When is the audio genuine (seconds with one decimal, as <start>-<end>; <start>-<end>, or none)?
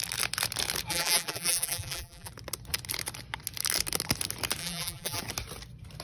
0.0-0.9; 2.3-4.6; 5.2-6.0